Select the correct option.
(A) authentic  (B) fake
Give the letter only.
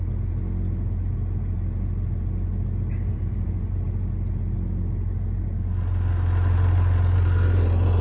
A